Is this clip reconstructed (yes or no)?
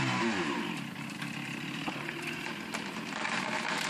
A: yes